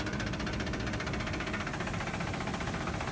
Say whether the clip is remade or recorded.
recorded